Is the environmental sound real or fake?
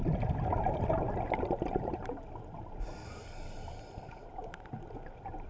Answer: real